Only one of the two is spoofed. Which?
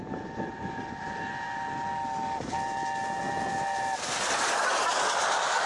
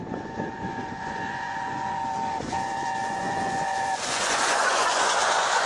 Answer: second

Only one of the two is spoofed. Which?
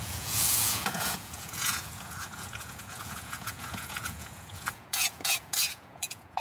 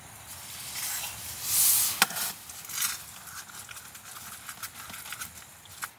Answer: first